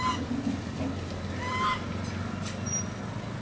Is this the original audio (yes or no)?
yes